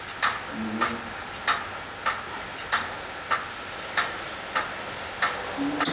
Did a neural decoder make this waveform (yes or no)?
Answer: no